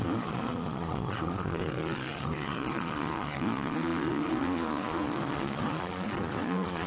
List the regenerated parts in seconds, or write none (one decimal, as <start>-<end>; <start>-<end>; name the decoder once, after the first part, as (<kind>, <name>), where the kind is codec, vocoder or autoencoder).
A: 0.0-6.9 (vocoder, Vocos)